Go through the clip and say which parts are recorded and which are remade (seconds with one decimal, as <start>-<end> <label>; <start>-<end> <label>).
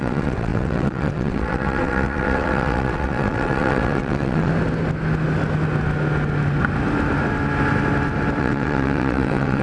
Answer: 0.0-4.5 remade; 4.5-8.4 recorded; 8.4-9.6 remade